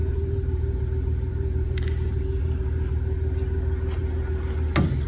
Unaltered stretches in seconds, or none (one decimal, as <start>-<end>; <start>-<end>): 0.8-1.3; 2.2-5.1